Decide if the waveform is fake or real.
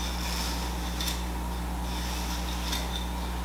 real